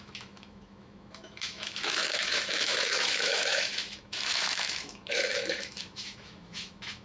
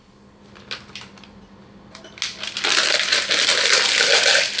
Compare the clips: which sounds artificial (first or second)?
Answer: first